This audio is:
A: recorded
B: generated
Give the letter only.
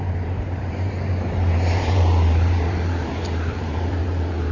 B